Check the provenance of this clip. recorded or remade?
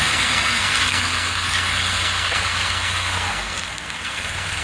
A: remade